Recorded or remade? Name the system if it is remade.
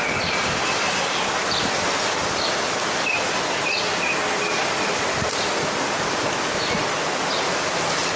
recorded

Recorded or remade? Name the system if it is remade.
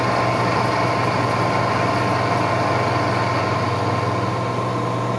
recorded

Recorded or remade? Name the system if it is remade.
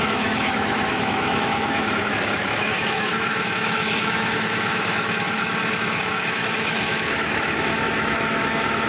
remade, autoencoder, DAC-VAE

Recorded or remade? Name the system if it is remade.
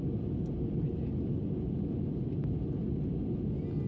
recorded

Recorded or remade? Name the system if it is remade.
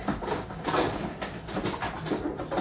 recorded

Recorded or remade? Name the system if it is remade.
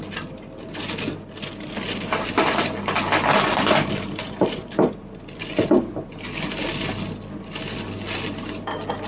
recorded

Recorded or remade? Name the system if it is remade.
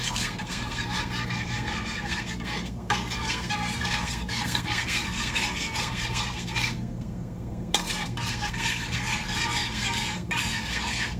remade, codec, SNAC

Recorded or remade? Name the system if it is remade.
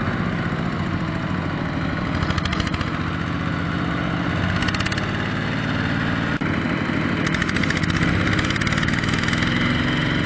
recorded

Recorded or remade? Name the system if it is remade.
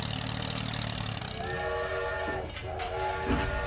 recorded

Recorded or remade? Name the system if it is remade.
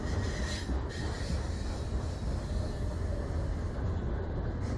recorded